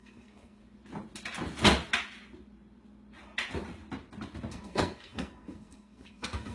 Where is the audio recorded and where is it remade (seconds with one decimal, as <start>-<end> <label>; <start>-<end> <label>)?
0.0-0.6 remade; 0.6-4.5 recorded; 4.5-6.5 remade